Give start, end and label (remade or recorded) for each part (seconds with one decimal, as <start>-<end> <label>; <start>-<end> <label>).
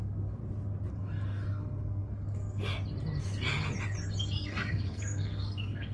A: 0.0-0.4 remade; 0.4-0.9 recorded; 0.9-2.7 remade; 2.7-4.2 recorded; 4.2-5.9 remade